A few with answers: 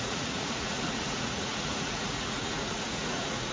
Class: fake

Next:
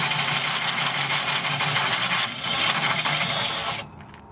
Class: real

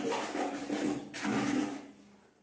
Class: real